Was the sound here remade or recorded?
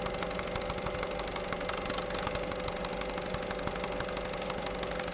recorded